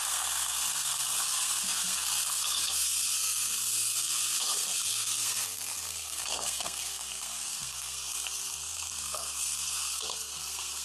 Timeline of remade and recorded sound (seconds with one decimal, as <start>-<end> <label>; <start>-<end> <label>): 0.0-10.8 remade